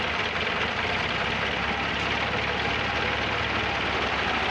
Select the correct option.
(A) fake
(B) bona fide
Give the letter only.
B